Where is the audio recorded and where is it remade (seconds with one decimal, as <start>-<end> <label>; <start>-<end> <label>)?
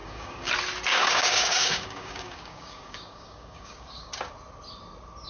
0.0-0.5 remade; 0.5-0.9 recorded; 0.9-4.1 remade; 4.1-5.3 recorded